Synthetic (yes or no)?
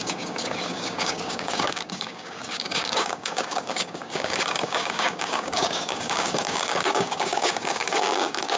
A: yes